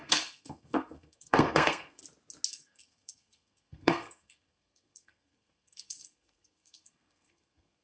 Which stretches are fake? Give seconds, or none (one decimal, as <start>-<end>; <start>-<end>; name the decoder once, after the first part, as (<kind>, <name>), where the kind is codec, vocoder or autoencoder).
0.0-2.0 (codec, SNAC); 2.5-7.8